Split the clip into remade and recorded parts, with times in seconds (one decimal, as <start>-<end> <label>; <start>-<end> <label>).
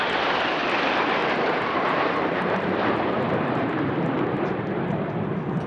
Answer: 0.0-1.2 recorded; 1.2-4.6 remade; 4.6-5.7 recorded